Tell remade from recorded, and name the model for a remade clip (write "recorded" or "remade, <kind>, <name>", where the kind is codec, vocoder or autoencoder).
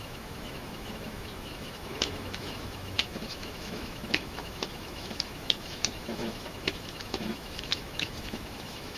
remade, autoencoder, DAC-VAE